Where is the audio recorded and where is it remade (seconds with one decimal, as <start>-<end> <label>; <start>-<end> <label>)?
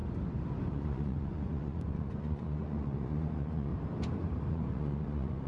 0.0-0.7 recorded; 0.7-3.7 remade; 3.7-4.5 recorded; 4.5-5.5 remade